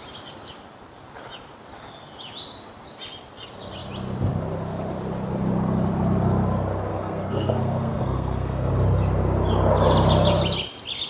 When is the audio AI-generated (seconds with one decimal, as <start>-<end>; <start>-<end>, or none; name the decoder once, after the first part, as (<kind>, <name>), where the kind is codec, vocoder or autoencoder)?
6.9-8.7 (codec, SNAC)